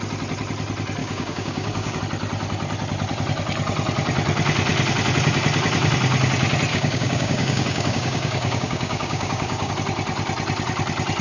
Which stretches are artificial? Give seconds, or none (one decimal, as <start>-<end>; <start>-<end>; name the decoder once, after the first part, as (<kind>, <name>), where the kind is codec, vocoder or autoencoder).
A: 1.0-2.0 (codec, DAC); 6.7-9.7